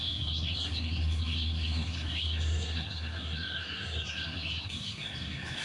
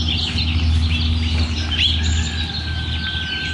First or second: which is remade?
first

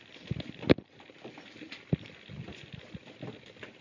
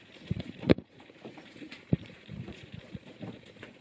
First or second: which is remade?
second